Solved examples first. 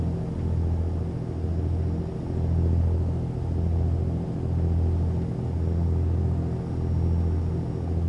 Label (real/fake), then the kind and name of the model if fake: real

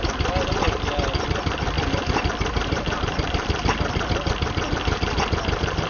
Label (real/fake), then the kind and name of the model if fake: real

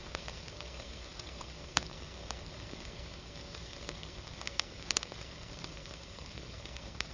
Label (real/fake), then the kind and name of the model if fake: fake, codec, SNAC